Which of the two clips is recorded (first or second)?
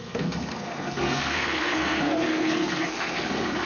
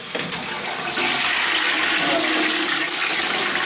second